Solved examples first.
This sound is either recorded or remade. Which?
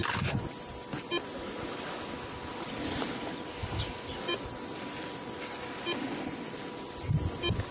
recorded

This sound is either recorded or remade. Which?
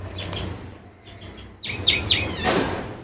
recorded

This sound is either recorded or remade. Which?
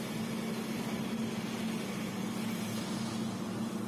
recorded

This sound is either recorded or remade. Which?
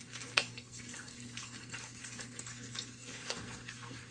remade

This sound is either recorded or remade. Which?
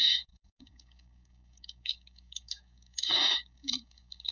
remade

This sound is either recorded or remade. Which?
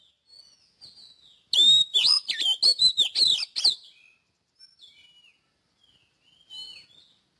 recorded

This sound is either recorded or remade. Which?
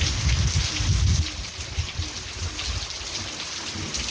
recorded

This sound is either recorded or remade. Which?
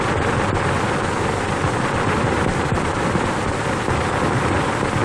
recorded